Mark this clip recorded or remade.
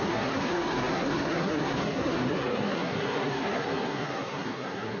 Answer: remade